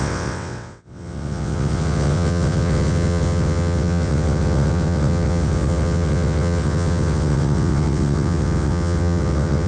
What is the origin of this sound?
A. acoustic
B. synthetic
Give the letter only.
B